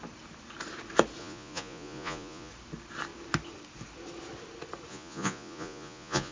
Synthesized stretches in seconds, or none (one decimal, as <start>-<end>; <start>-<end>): 1.2-2.5; 4.9-6.3